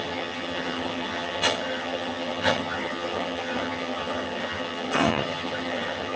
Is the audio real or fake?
fake